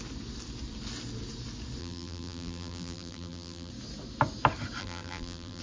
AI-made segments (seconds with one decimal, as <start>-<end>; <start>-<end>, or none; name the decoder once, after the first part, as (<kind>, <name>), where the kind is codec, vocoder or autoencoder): 1.8-3.7 (vocoder, BigVGAN v2); 4.8-5.6